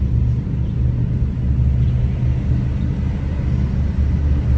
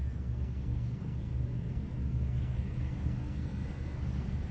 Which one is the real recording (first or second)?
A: first